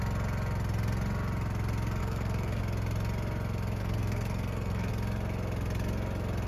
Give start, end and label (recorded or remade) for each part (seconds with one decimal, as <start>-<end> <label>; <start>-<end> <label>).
0.0-2.0 recorded; 2.0-2.6 remade; 2.6-3.8 recorded; 3.8-4.9 remade; 4.9-6.5 recorded